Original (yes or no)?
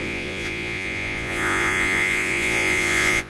no